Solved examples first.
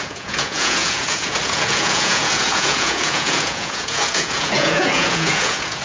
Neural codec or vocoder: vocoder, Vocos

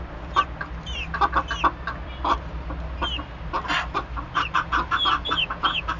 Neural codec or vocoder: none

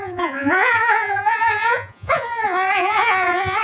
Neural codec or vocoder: vocoder, Vocos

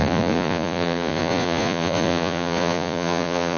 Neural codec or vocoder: vocoder, Vocos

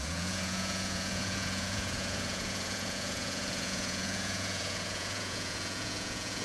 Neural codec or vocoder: vocoder, Vocos